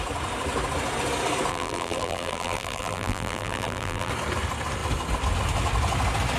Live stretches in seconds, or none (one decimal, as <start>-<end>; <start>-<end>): 0.0-1.5; 4.1-6.4